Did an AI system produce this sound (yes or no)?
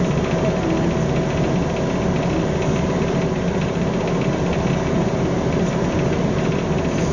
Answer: no